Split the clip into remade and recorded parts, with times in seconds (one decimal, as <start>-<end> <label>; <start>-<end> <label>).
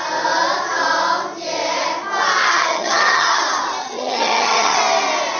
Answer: 0.0-2.4 recorded; 2.4-3.4 remade; 3.4-3.8 recorded; 3.8-4.8 remade; 4.8-5.4 recorded